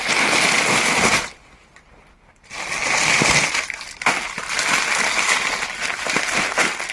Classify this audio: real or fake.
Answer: real